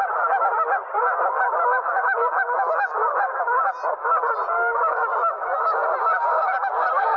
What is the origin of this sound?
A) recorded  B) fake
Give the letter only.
A